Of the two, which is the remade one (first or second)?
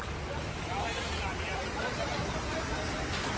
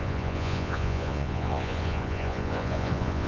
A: second